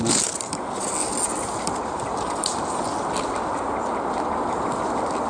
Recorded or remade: recorded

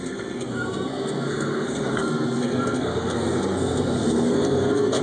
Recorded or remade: remade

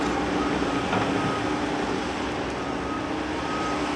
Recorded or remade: recorded